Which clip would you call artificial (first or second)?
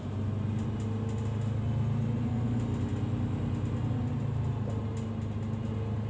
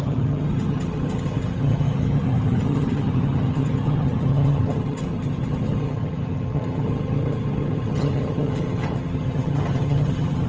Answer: second